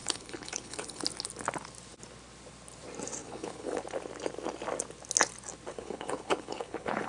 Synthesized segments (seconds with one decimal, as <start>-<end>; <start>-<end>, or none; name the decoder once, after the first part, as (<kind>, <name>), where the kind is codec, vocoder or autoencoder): 0.0-1.0 (codec, HILCodec); 3.2-3.8; 5.7-7.1